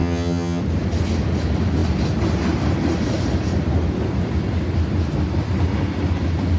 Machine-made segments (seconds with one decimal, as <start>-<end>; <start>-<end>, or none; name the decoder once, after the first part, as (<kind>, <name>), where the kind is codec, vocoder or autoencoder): 0.0-0.6 (vocoder, HiFi-GAN)